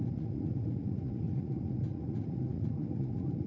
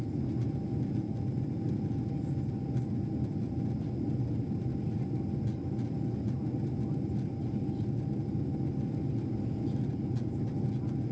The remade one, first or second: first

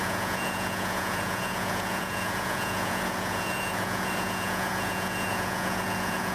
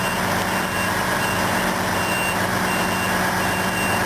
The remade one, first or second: first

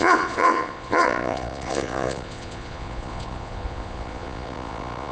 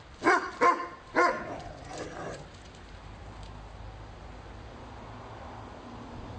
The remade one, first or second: first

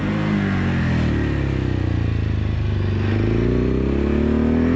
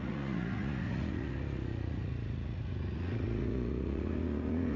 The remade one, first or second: second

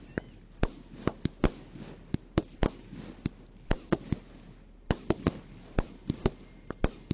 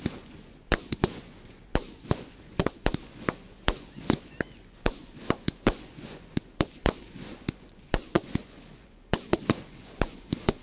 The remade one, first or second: second